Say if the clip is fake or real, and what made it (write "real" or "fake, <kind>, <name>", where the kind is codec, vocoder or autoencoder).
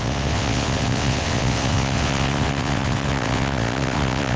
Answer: fake, vocoder, WaveNeXt